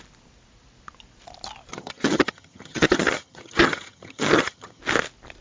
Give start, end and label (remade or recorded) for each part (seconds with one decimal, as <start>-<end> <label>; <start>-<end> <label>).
0.0-1.7 recorded; 1.7-4.8 remade; 4.8-5.4 recorded